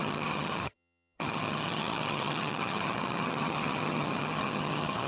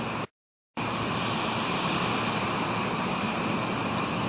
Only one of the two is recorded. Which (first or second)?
second